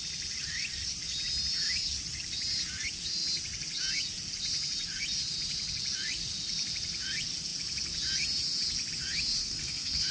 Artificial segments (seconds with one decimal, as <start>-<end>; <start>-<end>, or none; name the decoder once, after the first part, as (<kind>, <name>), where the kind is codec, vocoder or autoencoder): 9.4-10.1 (codec, SNAC)